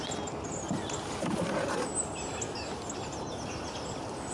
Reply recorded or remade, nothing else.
recorded